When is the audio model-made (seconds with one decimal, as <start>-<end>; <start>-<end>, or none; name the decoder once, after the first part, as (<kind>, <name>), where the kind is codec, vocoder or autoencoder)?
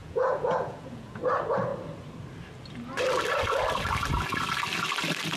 0.0-1.2 (vocoder, Vocos)